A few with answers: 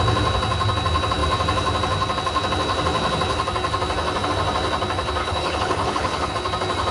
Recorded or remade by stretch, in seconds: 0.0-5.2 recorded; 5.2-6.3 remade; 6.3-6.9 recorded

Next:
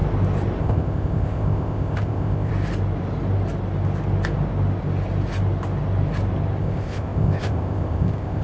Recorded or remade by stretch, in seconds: 0.0-0.6 recorded; 0.6-2.5 remade; 2.5-6.6 recorded; 6.6-8.4 remade

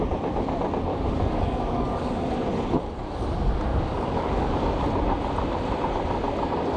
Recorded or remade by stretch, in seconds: 0.0-0.9 recorded; 0.9-2.3 remade; 2.3-3.7 recorded; 3.7-4.6 remade; 4.6-6.8 recorded

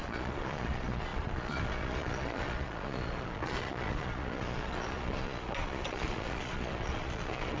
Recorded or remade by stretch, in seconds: 0.0-7.6 remade

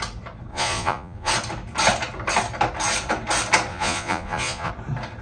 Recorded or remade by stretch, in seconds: 0.0-0.5 recorded; 0.5-1.3 remade; 1.3-3.7 recorded; 3.7-4.7 remade; 4.7-5.2 recorded

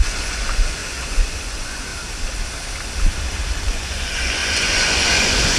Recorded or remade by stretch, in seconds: 0.0-1.9 remade; 1.9-3.6 recorded; 3.6-5.6 remade

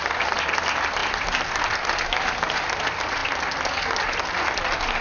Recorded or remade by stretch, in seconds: 0.0-5.0 recorded

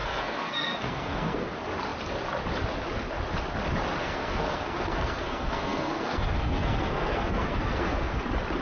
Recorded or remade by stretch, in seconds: 0.0-1.5 remade; 1.5-4.0 recorded; 4.0-8.2 remade; 8.2-8.6 recorded